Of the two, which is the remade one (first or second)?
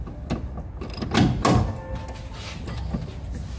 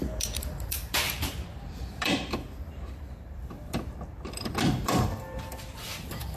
second